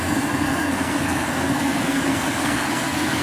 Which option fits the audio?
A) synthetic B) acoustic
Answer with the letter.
A